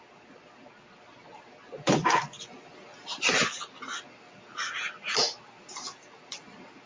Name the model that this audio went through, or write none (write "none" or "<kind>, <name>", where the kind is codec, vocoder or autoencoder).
none